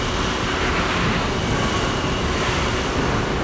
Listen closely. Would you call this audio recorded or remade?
remade